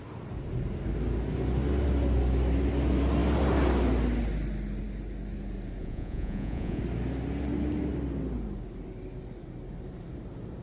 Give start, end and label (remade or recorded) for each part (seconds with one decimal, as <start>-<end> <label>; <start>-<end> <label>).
0.0-5.8 recorded; 5.8-6.8 remade; 6.8-10.6 recorded